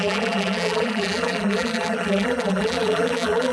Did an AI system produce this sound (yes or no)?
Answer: yes